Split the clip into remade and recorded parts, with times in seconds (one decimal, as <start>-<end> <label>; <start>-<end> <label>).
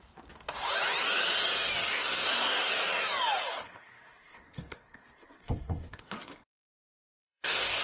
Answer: 0.0-1.9 recorded; 1.9-2.7 remade; 2.7-3.5 recorded; 3.5-7.8 remade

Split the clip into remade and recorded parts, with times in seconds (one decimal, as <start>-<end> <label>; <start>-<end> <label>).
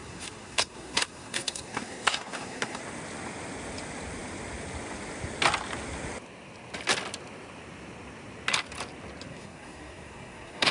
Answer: 0.0-2.8 remade; 2.8-9.3 recorded; 9.3-10.7 remade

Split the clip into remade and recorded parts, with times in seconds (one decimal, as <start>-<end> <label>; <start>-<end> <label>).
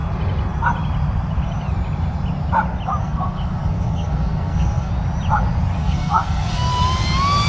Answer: 0.0-3.0 recorded; 3.0-4.9 remade; 4.9-5.8 recorded; 5.8-6.7 remade; 6.7-7.5 recorded